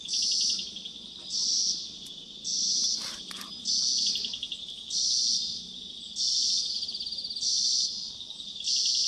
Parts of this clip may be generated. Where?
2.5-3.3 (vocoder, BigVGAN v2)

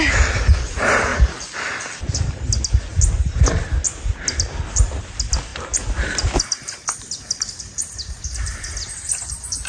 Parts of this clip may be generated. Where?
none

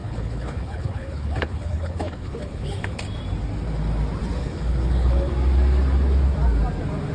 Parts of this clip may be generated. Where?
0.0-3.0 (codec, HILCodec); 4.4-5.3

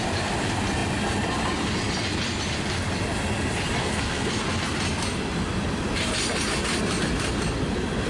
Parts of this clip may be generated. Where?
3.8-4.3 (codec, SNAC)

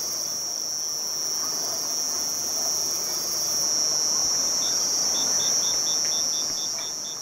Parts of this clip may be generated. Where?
4.2-5.8 (vocoder, BigVGAN v2)